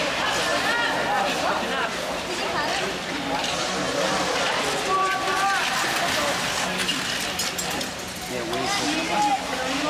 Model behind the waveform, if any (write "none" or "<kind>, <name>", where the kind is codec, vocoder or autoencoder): none